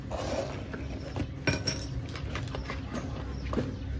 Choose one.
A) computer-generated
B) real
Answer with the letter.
B